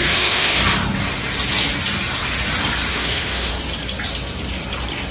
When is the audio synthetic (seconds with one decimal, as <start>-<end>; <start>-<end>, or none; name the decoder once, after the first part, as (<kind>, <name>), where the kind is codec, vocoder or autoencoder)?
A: 0.0-0.6 (autoencoder, DAC-VAE); 2.9-3.5